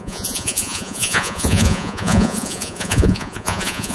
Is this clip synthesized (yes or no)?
yes